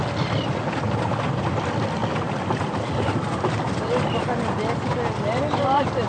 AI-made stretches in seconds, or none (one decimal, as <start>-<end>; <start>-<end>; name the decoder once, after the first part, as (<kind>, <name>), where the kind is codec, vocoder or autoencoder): none